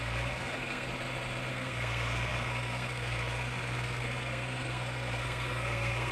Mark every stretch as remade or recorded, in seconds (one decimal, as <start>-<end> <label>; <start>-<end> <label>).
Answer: 0.0-0.9 remade; 0.9-1.5 recorded; 1.5-6.1 remade